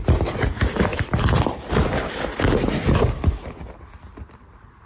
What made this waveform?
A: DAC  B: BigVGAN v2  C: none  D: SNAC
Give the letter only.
C